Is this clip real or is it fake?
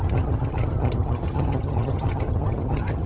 fake